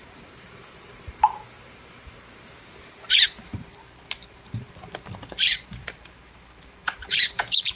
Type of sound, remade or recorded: remade